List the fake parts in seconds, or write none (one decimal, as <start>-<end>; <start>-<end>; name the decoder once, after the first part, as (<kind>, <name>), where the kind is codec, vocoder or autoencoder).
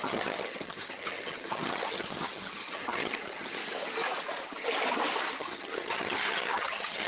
0.0-3.6 (vocoder, HiFi-GAN); 5.4-7.1